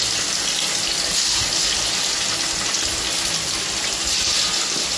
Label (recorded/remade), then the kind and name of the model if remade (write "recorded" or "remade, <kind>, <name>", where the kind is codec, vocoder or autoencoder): recorded